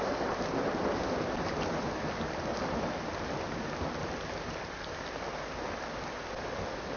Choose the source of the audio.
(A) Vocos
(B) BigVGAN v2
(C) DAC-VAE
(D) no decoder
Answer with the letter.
D